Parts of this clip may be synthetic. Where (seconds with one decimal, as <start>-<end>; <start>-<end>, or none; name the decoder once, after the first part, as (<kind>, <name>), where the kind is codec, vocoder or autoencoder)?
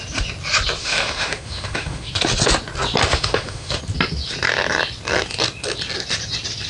0.8-2.1 (autoencoder, DAC-VAE); 3.1-3.8